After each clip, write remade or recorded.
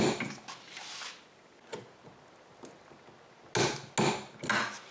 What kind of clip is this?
recorded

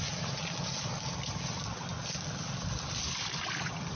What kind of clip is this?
recorded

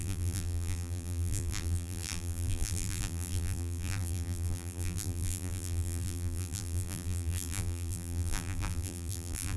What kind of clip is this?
remade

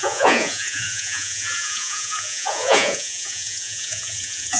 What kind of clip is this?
remade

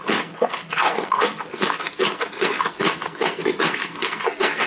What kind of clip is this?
remade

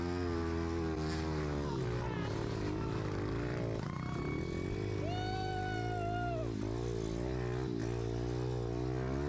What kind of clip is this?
recorded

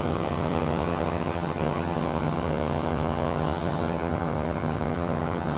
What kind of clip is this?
remade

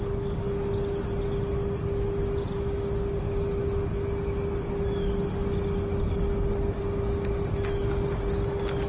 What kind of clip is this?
recorded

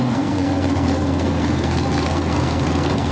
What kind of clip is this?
remade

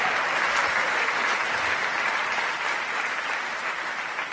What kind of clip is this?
recorded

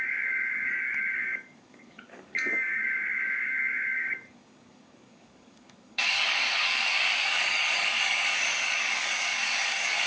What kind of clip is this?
remade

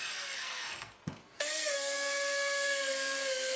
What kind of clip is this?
remade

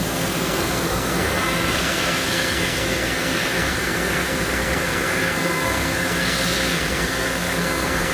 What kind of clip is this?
remade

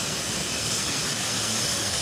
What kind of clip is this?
remade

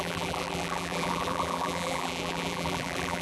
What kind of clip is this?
remade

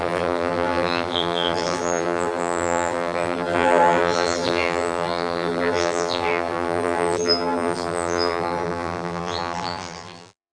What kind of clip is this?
remade